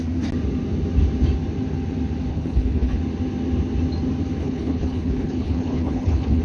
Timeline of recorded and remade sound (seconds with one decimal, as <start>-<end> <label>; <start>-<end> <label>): 0.0-2.3 recorded; 2.3-3.0 remade; 3.0-4.4 recorded; 4.4-6.4 remade

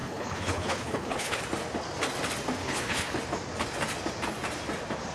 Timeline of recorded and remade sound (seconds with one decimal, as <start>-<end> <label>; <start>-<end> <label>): 0.0-1.4 remade; 1.4-2.6 recorded; 2.6-3.2 remade; 3.2-5.1 recorded